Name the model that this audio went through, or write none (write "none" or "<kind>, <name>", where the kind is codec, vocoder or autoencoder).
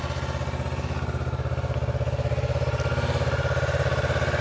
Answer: none